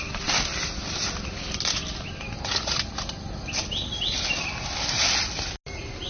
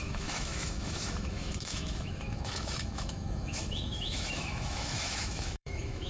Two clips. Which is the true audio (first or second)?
first